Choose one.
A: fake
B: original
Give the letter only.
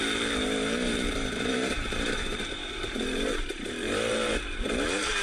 A